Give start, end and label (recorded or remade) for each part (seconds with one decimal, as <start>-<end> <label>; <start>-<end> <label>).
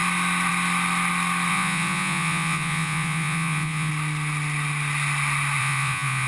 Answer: 0.0-1.5 recorded; 1.5-3.9 remade; 3.9-5.6 recorded; 5.6-6.3 remade